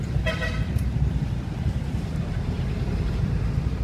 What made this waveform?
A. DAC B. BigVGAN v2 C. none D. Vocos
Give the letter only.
B